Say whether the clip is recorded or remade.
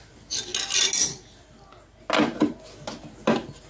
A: recorded